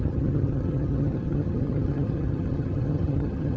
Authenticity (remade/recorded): remade